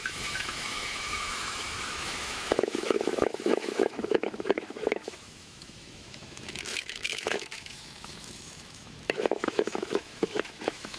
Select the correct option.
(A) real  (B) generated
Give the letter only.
B